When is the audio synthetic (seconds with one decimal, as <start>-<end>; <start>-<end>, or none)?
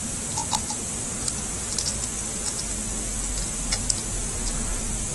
0.0-1.9